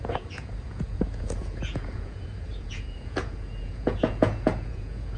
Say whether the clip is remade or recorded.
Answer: remade